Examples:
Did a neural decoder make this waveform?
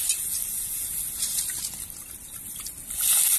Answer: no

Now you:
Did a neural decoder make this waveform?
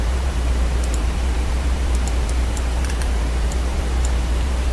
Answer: yes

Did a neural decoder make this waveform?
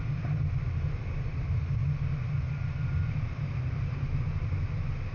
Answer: no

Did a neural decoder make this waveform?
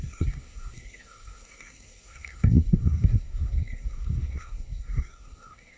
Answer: yes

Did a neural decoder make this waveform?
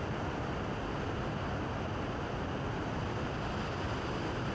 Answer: no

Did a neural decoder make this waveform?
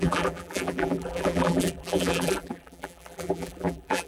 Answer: yes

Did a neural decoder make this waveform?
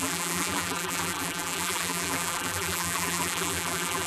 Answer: yes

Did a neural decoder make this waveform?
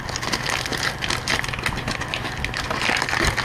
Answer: no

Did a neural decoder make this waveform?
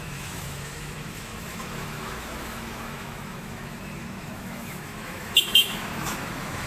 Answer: yes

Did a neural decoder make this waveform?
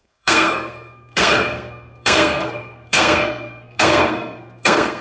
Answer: yes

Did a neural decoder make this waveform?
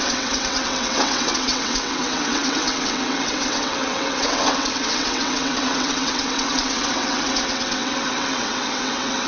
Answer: yes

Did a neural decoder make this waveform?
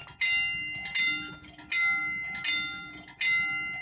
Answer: no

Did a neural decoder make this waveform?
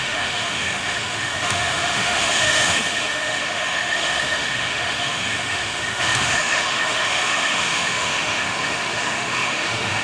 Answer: yes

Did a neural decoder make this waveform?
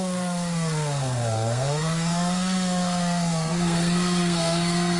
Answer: yes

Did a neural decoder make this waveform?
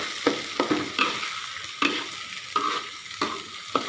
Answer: no